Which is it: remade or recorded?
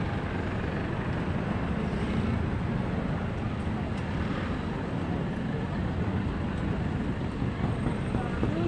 recorded